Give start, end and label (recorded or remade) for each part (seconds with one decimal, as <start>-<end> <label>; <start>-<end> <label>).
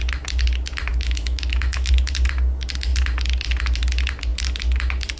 0.0-0.9 recorded; 0.9-1.9 remade; 1.9-5.2 recorded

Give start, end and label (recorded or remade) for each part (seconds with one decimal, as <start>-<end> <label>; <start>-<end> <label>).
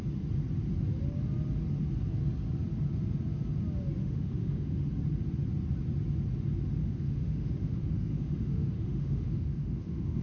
0.0-4.0 recorded; 4.0-4.9 remade; 4.9-6.8 recorded; 6.8-10.2 remade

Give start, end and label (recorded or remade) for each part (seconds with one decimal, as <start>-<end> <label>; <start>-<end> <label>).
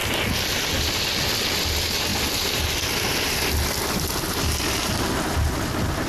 0.0-6.1 recorded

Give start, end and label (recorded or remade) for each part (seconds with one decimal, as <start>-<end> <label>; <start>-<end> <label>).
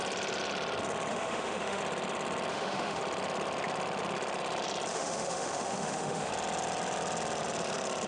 0.0-1.1 recorded; 1.1-1.8 remade; 1.8-2.5 recorded; 2.5-3.0 remade; 3.0-4.9 recorded; 4.9-6.3 remade; 6.3-8.1 recorded